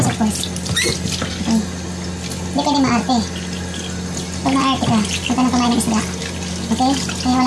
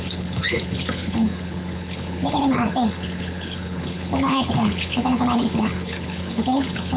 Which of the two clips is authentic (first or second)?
first